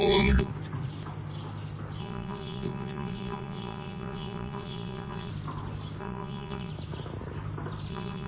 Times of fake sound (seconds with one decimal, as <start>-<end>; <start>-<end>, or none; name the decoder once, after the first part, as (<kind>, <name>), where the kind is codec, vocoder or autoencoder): 0.0-0.5 (vocoder, Vocos); 2.0-5.3; 6.0-6.7; 7.9-8.3